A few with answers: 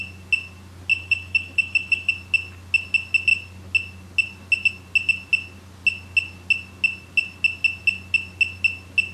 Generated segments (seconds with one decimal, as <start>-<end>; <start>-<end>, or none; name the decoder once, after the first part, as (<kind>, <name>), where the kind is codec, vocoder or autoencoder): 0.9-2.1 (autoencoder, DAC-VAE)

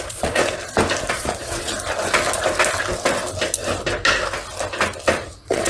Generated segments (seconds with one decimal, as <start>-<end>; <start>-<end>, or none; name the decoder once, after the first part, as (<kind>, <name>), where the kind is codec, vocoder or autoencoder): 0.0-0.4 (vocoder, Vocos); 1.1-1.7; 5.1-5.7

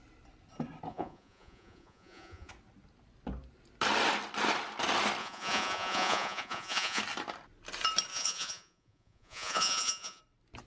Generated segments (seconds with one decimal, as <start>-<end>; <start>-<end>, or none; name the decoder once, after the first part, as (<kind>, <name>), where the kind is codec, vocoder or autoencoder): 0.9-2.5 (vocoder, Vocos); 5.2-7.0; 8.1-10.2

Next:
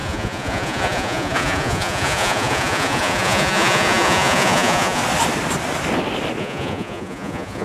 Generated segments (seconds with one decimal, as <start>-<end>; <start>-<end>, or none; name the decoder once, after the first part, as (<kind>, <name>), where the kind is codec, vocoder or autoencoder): 0.0-5.0 (vocoder, Vocos); 6.4-7.6

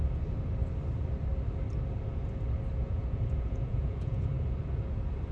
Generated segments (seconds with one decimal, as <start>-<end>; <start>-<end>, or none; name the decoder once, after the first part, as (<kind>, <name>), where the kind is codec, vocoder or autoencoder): 2.8-4.3 (vocoder, Vocos)